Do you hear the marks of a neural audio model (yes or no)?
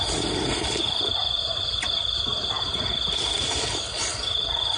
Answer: no